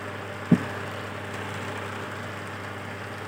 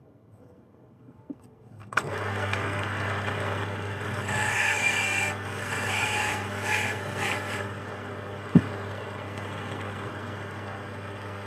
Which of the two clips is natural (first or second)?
first